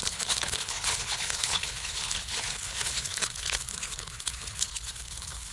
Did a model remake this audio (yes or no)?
yes